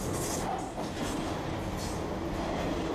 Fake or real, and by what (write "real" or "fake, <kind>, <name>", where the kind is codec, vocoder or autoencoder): real